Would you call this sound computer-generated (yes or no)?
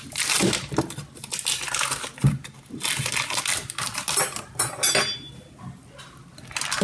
no